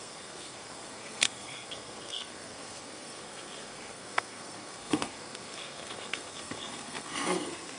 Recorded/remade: remade